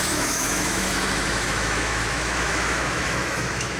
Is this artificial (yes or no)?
yes